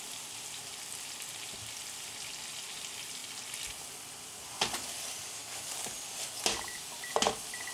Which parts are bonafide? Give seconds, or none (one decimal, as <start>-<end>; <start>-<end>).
0.0-7.7